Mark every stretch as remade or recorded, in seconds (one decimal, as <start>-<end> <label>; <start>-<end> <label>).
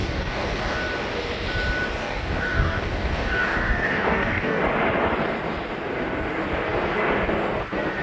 0.0-0.8 remade; 0.8-2.0 recorded; 2.0-4.6 remade; 4.6-8.0 recorded